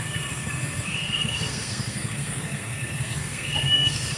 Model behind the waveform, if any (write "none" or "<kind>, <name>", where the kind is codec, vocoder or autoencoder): codec, SNAC